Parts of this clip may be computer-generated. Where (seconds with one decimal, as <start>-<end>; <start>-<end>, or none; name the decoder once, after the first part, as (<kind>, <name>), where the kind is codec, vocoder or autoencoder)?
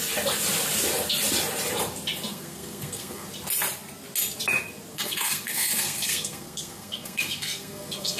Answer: 2.3-3.3 (codec, SNAC); 4.9-8.2